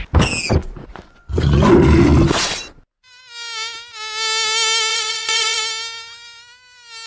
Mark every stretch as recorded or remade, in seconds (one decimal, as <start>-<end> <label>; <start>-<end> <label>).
0.0-0.6 recorded; 0.6-1.7 remade; 1.7-4.9 recorded; 4.9-5.6 remade; 5.6-7.1 recorded